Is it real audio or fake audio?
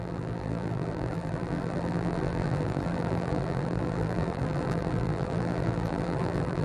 fake